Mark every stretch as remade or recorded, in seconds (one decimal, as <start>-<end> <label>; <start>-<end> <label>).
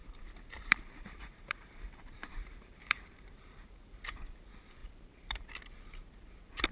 0.0-4.0 remade; 4.0-4.8 recorded; 4.8-5.5 remade; 5.5-6.7 recorded